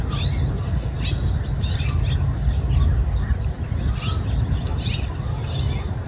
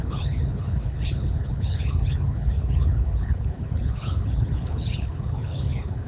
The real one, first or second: first